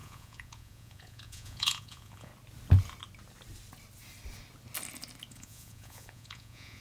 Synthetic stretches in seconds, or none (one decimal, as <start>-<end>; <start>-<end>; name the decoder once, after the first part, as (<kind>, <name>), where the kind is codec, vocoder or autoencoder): 0.0-2.3 (vocoder, Vocos); 5.3-6.8

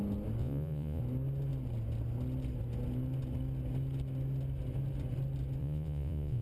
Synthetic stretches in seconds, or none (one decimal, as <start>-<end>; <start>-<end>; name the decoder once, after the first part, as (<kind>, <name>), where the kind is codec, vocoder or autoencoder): 0.4-1.0 (vocoder, Vocos); 5.6-6.4

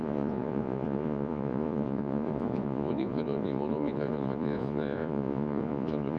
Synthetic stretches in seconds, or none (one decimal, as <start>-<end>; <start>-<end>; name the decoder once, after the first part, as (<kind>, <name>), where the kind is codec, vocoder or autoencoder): 0.0-6.2 (vocoder, Vocos)

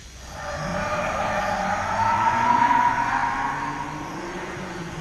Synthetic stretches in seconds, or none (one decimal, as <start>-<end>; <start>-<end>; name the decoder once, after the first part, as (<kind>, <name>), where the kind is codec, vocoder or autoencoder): 0.0-0.7 (vocoder, Vocos); 1.8-3.2; 4.0-5.0

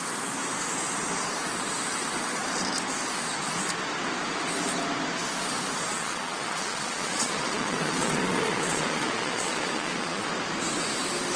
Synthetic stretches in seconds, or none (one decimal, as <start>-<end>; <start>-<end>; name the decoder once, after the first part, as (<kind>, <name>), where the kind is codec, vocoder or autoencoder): 5.9-10.3 (vocoder, Vocos)

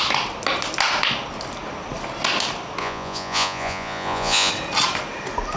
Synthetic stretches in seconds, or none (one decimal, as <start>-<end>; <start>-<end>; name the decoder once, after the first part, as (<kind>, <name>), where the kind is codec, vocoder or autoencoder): 2.8-4.5 (vocoder, Vocos)